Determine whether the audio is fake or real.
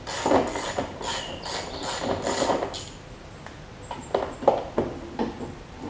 real